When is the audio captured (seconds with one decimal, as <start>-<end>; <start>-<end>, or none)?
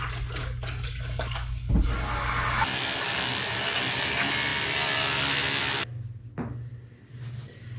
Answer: 0.0-0.4; 1.7-7.8